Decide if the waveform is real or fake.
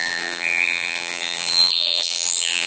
fake